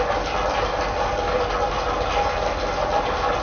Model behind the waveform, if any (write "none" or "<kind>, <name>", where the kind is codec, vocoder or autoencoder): none